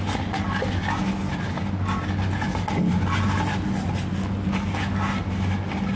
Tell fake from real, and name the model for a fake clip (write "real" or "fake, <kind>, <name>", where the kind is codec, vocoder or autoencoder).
real